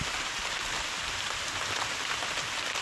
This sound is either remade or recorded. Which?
remade